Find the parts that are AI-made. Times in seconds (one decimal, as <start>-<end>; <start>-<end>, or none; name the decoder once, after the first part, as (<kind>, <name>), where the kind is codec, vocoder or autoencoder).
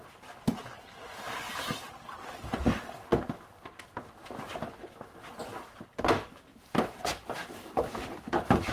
6.5-8.7 (vocoder, BigVGAN v2)